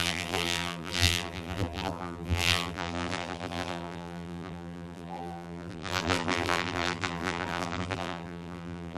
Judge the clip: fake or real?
fake